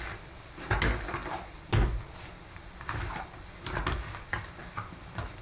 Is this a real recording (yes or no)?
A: yes